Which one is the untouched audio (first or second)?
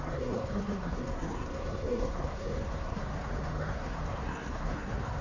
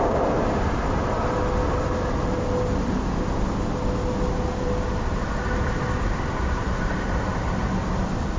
second